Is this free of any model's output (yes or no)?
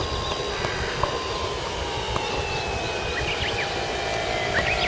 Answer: yes